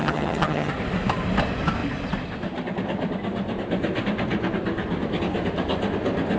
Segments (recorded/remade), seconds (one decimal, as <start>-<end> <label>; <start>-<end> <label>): 0.0-0.7 remade; 0.7-6.4 recorded